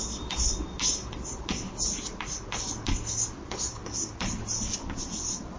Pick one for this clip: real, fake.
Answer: real